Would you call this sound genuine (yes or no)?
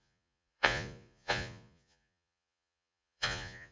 no